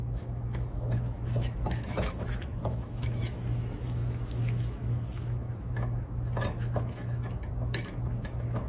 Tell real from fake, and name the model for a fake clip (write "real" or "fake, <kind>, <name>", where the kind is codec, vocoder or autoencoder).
fake, autoencoder, DAC-VAE